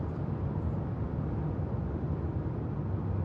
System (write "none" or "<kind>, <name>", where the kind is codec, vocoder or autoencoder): none